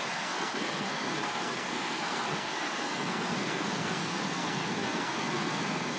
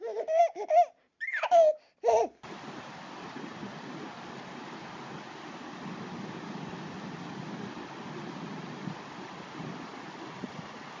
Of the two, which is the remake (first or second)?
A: first